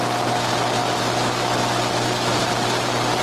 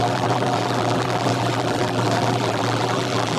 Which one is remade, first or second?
second